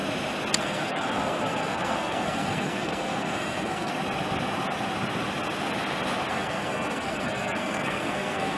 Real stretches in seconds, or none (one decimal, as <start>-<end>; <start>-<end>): 0.0-0.6; 3.9-6.3